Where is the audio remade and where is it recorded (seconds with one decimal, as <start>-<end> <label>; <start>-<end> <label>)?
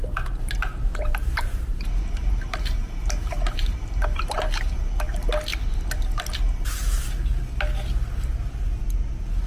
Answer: 0.0-0.9 recorded; 0.9-4.8 remade; 4.8-5.5 recorded; 5.5-6.2 remade; 6.2-9.5 recorded